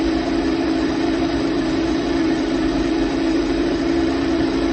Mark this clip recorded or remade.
remade